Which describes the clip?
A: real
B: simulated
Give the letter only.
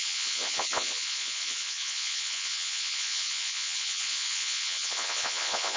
B